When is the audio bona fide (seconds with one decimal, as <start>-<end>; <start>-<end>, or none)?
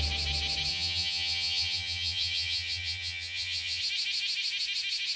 0.0-0.7; 3.8-5.2